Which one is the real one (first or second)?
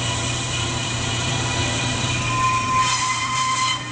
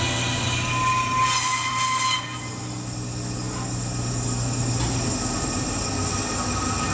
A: second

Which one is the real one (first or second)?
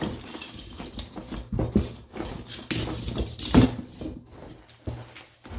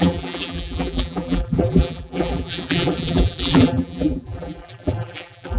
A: first